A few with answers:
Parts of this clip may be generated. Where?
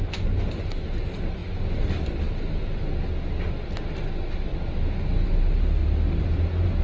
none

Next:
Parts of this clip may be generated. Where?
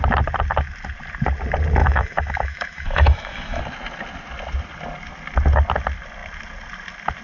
1.8-3.6 (autoencoder, DAC-VAE)